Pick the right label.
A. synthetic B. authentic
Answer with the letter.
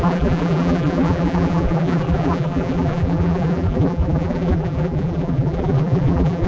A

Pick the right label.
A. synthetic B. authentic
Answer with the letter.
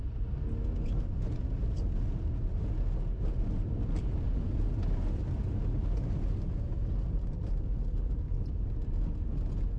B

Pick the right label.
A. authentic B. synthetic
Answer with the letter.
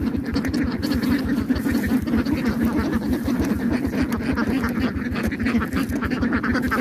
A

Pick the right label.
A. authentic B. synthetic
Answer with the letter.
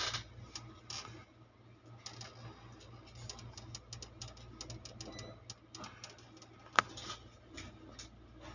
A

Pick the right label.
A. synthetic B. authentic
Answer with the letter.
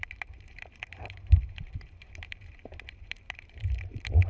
A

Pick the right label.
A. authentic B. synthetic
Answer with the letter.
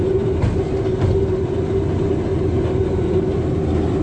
A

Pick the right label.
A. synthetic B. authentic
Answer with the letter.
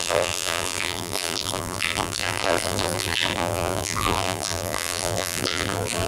A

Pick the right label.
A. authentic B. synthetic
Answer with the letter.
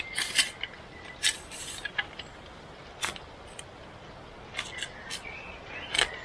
A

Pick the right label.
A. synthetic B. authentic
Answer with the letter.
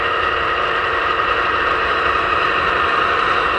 A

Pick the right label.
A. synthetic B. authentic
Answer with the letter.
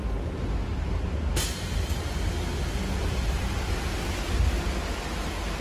B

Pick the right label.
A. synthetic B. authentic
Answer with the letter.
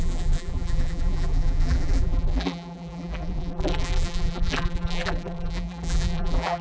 A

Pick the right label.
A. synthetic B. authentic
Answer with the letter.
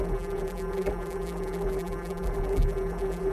A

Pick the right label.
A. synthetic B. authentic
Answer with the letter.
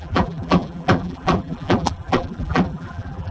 A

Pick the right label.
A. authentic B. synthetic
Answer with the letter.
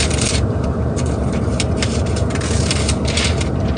B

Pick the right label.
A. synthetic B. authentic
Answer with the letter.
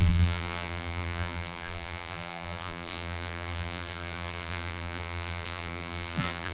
A